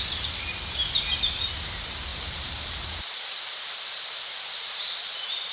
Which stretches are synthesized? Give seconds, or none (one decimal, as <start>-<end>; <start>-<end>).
2.1-5.5